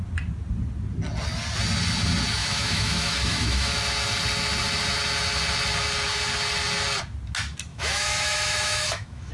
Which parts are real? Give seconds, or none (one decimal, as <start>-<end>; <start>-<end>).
0.0-2.4; 3.7-7.7